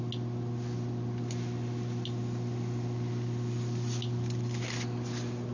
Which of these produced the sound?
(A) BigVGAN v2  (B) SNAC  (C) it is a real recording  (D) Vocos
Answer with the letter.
C